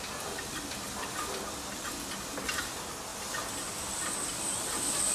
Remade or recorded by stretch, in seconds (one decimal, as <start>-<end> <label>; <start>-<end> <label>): 0.0-5.1 recorded